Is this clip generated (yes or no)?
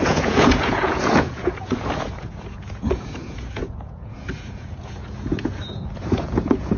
yes